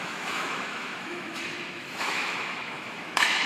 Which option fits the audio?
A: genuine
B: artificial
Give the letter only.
B